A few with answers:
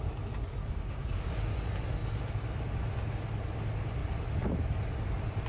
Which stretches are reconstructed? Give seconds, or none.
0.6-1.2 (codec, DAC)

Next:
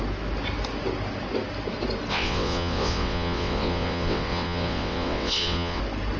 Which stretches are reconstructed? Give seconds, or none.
2.1-5.8 (vocoder, WaveNeXt)

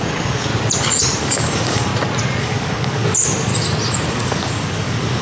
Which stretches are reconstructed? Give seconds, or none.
0.0-0.5 (codec, DAC); 1.0-1.9; 2.4-3.5; 4.1-5.2

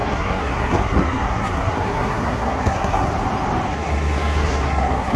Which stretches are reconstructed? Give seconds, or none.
0.0-3.1 (codec, SNAC); 3.7-5.2

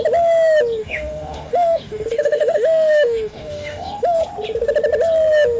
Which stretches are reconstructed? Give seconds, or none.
0.8-4.2 (autoencoder, DAC-VAE)

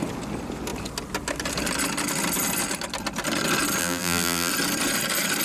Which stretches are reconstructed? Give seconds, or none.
3.8-4.5 (vocoder, BigVGAN v2)